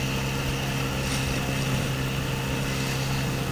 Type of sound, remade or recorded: recorded